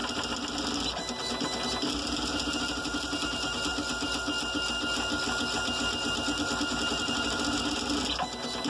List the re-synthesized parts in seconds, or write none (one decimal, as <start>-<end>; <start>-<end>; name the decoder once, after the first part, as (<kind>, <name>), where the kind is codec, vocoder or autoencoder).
none